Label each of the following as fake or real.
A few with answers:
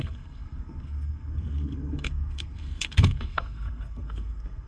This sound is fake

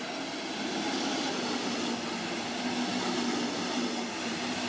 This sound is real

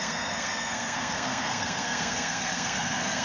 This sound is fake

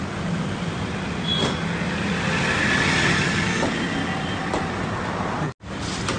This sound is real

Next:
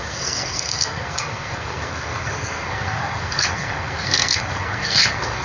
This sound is fake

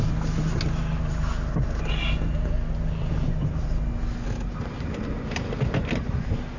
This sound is real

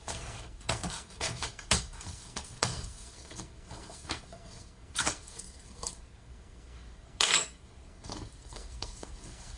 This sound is fake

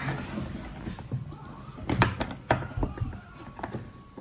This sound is real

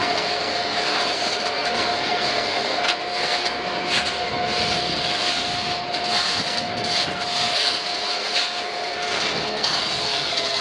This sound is fake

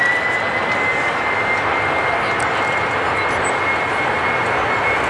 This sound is real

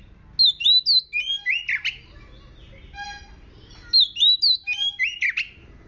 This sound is real